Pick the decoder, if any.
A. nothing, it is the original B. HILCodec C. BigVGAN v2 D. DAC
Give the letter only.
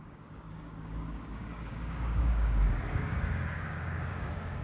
D